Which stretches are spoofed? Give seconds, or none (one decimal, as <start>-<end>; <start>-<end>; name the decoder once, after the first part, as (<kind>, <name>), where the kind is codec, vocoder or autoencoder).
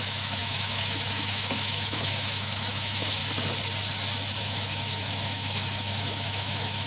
0.0-3.2 (autoencoder, DAC-VAE); 4.4-6.9